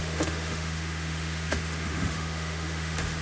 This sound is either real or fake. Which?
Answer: fake